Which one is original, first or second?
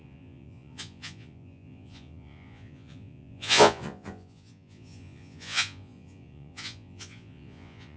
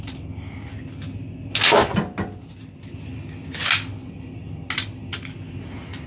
second